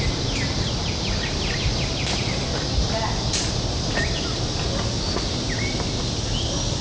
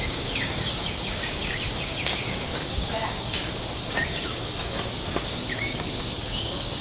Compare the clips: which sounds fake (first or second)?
second